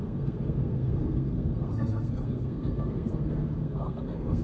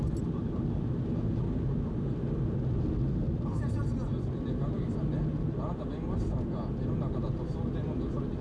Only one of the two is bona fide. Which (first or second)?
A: second